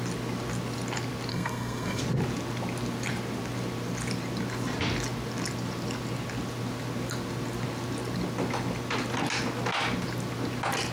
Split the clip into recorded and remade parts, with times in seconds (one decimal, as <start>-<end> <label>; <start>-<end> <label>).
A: 0.0-1.3 recorded; 1.3-2.0 remade; 2.0-10.9 recorded